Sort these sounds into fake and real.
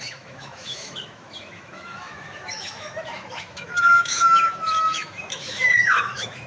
fake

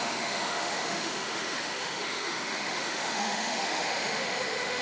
fake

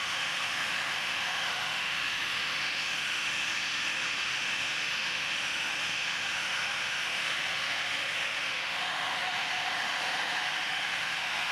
fake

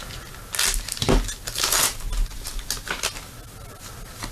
real